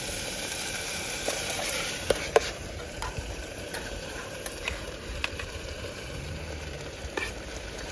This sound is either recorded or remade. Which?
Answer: remade